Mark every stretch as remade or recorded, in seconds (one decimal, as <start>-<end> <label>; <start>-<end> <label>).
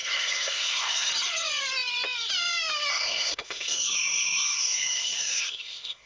0.0-1.1 remade; 1.1-2.9 recorded; 2.9-6.1 remade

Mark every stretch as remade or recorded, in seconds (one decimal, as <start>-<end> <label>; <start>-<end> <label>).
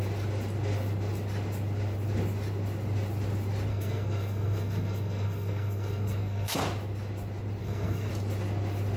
0.0-3.7 recorded; 3.7-6.6 remade; 6.6-7.6 recorded; 7.6-8.1 remade; 8.1-9.0 recorded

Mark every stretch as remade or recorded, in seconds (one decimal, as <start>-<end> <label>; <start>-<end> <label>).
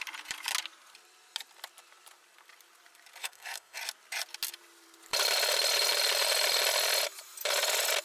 0.0-3.2 recorded; 3.2-3.8 remade; 3.8-8.0 recorded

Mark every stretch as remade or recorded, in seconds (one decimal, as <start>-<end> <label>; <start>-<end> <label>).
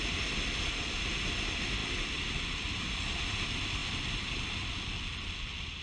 0.0-5.8 recorded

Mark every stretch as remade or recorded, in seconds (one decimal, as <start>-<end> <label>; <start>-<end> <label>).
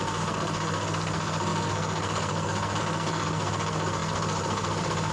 0.0-5.1 remade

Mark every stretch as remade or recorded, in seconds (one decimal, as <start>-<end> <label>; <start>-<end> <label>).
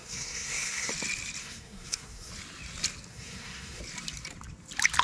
0.0-0.9 remade; 0.9-1.4 recorded; 1.4-2.3 remade; 2.3-3.1 recorded; 3.1-3.8 remade; 3.8-5.0 recorded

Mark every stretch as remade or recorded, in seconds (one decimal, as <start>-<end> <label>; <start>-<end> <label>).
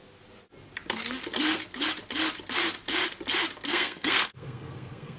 0.0-3.7 recorded; 3.7-5.2 remade